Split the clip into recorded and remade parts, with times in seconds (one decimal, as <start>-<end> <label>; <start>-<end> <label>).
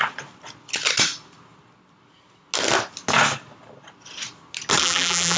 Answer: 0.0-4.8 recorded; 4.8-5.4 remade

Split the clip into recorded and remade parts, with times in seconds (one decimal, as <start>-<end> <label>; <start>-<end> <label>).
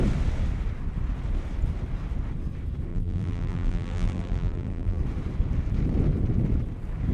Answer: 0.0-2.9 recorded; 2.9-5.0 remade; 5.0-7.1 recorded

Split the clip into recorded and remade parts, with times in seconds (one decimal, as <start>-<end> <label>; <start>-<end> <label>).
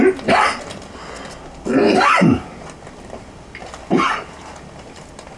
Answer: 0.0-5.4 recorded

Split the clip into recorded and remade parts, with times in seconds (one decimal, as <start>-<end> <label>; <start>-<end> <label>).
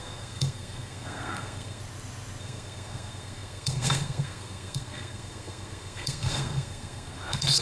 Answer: 0.0-1.8 remade; 1.8-2.4 recorded; 2.4-7.6 remade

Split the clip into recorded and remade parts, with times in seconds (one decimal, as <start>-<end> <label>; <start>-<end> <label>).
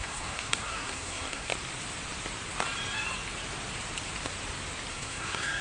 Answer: 0.0-1.5 remade; 1.5-4.9 recorded; 4.9-5.6 remade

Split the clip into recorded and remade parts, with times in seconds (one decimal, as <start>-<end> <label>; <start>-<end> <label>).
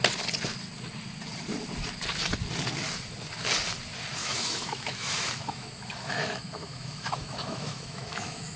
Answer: 0.0-4.2 recorded; 4.2-8.6 remade